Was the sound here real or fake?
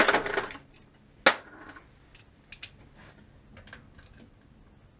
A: real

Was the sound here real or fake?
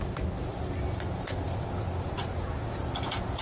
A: real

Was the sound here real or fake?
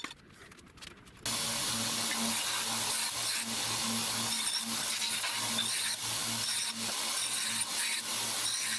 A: real